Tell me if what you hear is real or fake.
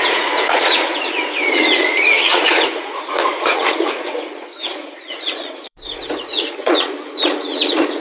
fake